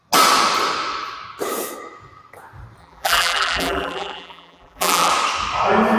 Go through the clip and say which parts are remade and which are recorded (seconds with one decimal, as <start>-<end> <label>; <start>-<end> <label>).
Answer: 0.0-2.8 recorded; 2.8-5.1 remade; 5.1-6.0 recorded